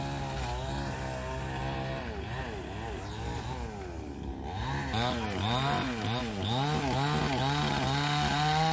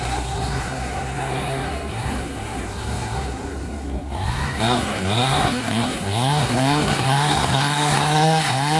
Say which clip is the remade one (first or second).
second